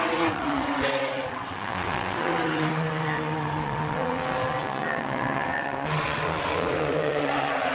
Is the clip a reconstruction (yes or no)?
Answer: yes